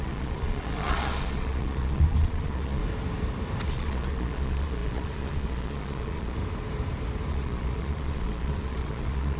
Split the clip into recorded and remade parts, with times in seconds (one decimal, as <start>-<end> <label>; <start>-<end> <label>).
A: 0.0-2.8 remade; 2.8-3.7 recorded; 3.7-6.4 remade; 6.4-7.3 recorded; 7.3-9.4 remade